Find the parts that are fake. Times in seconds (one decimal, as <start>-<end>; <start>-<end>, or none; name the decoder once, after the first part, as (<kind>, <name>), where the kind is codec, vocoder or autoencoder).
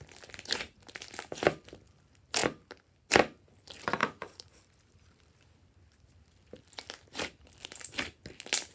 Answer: 4.0-4.6 (vocoder, Vocos)